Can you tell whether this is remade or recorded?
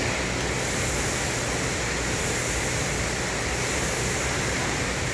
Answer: recorded